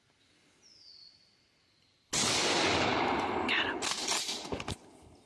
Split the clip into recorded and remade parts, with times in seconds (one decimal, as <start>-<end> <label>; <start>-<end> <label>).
0.0-5.3 recorded